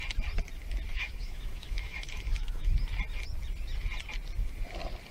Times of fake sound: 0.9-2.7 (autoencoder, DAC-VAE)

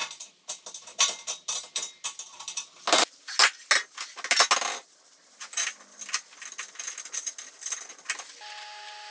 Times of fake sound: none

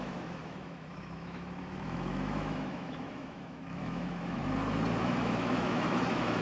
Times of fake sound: 0.0-4.4 (autoencoder, DAC-VAE); 5.0-6.4